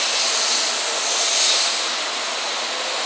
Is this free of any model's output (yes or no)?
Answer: yes